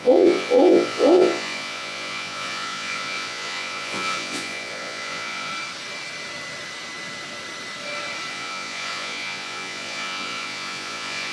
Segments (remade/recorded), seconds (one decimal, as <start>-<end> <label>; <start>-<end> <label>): 0.0-5.5 remade; 5.5-8.3 recorded; 8.3-11.3 remade